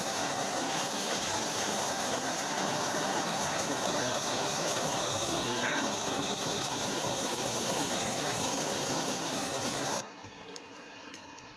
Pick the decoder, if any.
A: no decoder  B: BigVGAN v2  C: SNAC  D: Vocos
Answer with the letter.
C